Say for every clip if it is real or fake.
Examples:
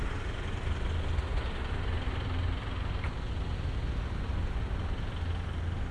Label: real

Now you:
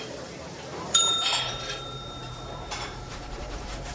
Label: fake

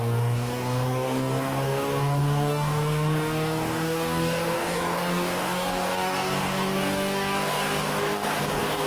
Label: fake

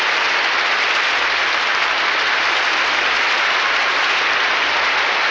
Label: real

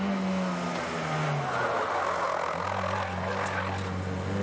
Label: real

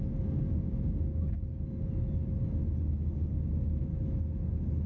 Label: real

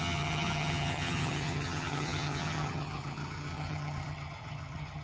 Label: fake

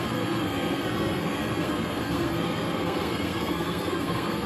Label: fake